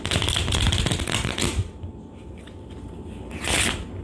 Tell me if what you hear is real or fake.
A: real